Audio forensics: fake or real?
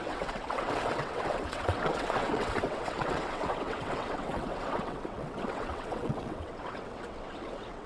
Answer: fake